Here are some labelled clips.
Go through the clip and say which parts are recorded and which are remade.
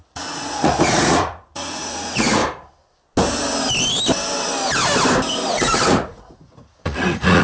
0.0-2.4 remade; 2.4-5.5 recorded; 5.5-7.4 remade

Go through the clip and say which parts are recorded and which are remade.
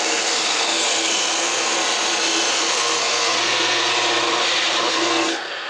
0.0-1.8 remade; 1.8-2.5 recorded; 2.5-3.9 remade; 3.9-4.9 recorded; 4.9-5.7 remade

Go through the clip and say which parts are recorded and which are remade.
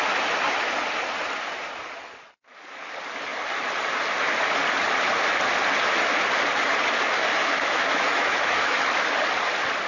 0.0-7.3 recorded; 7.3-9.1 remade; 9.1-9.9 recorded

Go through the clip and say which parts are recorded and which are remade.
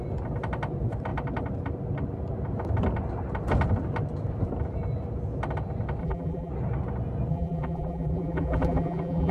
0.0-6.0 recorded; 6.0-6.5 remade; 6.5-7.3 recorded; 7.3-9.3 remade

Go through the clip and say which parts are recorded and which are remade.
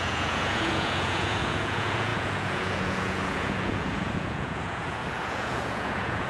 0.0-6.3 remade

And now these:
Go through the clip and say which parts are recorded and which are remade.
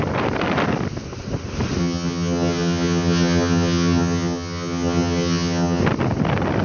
0.0-1.8 recorded; 1.8-5.8 remade; 5.8-6.6 recorded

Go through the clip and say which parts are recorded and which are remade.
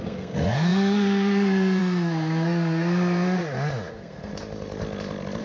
0.0-3.4 remade; 3.4-3.9 recorded; 3.9-4.3 remade; 4.3-5.4 recorded